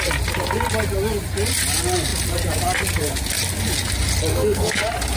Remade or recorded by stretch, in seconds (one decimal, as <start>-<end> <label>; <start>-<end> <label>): 0.0-4.3 recorded; 4.3-4.8 remade; 4.8-5.2 recorded